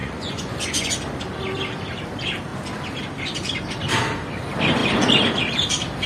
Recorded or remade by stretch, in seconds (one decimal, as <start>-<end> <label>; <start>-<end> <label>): 0.0-0.9 remade; 0.9-6.1 recorded